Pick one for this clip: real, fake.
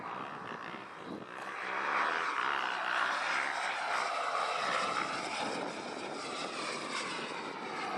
real